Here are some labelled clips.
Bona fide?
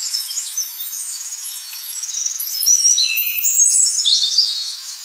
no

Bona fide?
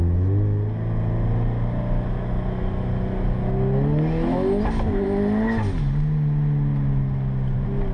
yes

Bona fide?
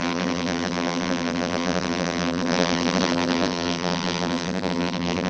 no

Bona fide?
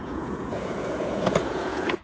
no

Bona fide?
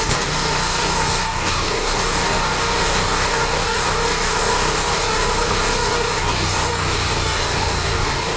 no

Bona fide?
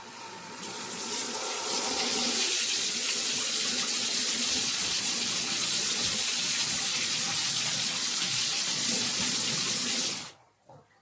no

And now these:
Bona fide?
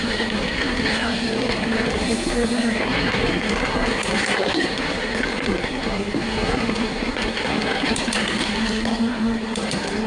no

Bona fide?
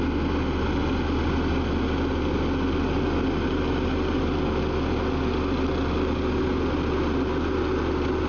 yes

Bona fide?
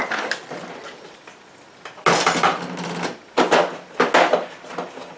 yes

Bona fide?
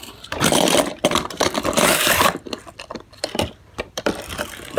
no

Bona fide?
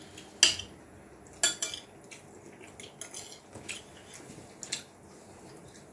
yes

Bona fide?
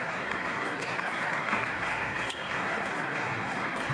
no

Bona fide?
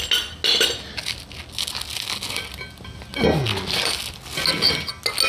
yes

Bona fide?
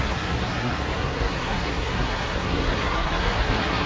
no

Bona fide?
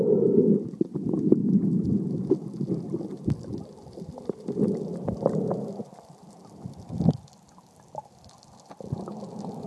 yes